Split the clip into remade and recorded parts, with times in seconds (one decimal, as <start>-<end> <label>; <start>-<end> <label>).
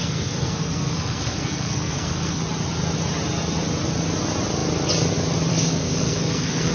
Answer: 0.0-2.4 remade; 2.4-5.5 recorded; 5.5-6.7 remade